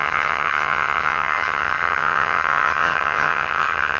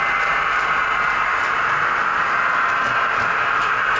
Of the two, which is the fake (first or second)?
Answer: first